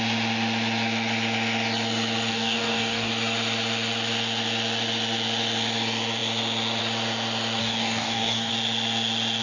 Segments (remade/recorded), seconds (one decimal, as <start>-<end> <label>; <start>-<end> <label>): 0.0-2.3 recorded; 2.3-3.1 remade; 3.1-7.6 recorded; 7.6-8.5 remade; 8.5-9.4 recorded